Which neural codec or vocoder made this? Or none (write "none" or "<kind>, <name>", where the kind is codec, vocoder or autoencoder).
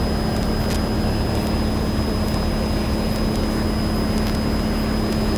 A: none